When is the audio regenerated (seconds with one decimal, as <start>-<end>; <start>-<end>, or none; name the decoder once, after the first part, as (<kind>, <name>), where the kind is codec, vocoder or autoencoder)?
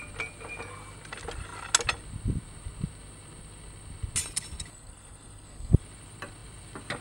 4.7-5.8 (codec, SNAC)